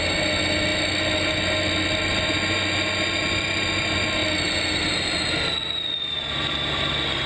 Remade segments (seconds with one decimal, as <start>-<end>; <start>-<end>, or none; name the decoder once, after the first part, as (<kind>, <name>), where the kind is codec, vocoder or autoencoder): none